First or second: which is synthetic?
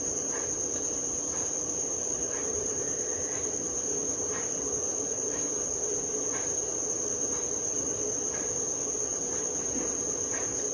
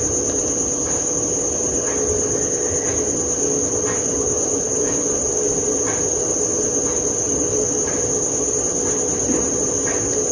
first